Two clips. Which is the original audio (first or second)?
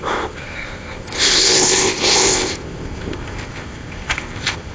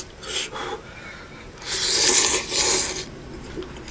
second